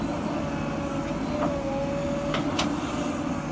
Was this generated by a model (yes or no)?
no